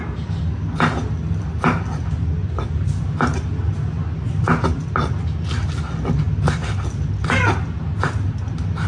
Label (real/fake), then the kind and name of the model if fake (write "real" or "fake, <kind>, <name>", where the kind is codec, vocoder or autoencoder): real